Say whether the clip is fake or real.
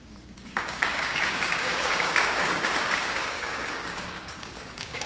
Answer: fake